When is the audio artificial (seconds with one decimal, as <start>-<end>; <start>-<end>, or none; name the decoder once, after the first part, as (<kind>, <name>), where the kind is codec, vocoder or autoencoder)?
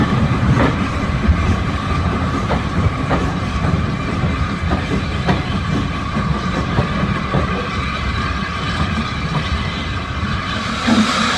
0.0-3.6 (vocoder, BigVGAN v2); 4.7-11.4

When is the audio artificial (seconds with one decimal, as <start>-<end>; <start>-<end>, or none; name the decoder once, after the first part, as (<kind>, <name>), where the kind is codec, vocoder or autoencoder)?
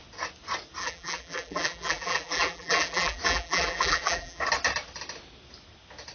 0.8-4.4 (vocoder, BigVGAN v2)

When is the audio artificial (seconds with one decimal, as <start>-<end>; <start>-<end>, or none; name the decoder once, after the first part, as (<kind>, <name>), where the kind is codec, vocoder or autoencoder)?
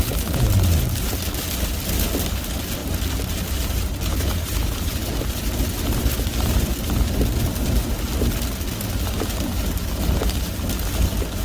2.8-5.4 (vocoder, BigVGAN v2)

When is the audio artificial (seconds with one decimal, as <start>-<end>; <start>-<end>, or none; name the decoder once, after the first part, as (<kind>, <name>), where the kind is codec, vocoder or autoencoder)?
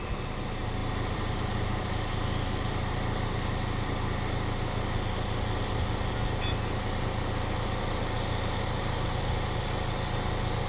0.8-2.2 (vocoder, BigVGAN v2)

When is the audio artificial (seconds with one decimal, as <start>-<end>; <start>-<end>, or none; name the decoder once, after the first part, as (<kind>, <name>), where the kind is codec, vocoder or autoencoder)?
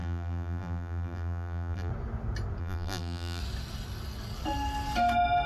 0.0-1.9 (vocoder, BigVGAN v2); 2.6-3.4